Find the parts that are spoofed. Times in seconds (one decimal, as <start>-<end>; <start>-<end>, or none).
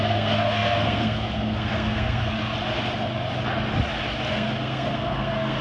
0.0-2.5; 4.3-5.6